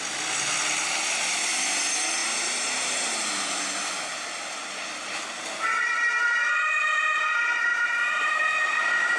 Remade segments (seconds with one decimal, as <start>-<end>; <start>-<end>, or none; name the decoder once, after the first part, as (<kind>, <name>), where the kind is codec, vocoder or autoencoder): none